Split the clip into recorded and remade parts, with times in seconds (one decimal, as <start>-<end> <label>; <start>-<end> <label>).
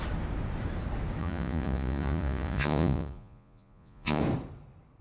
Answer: 0.0-1.2 recorded; 1.2-4.2 remade; 4.2-5.0 recorded